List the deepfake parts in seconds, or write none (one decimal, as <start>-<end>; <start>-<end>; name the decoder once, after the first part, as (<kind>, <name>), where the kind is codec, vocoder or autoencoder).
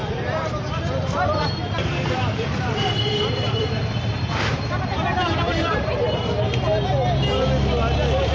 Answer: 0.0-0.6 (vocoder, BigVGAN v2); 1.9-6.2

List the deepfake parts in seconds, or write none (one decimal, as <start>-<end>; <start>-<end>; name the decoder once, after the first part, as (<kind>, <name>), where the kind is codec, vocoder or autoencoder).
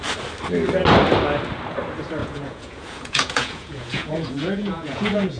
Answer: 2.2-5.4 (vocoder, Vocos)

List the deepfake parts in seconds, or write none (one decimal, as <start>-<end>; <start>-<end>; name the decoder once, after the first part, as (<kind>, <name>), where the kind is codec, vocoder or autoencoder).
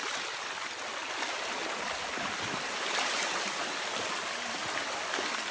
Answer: none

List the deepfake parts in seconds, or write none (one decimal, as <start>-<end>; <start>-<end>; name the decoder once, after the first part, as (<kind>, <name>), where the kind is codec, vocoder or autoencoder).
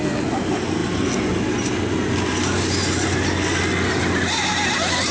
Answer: none